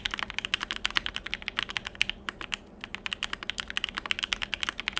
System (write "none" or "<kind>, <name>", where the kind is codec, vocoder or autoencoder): none